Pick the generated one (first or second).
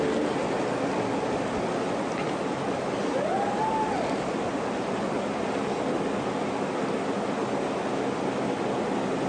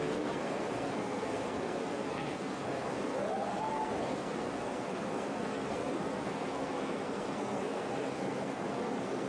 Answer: second